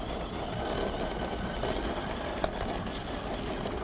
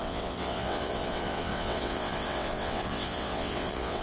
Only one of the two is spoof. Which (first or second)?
second